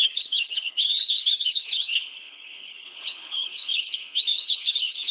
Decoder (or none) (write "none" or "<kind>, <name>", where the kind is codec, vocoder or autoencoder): codec, HILCodec